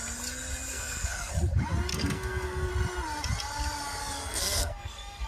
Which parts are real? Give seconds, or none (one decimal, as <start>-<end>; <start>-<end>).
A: 0.0-0.7; 1.3-1.9; 2.7-4.0